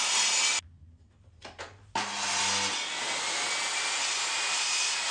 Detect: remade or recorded recorded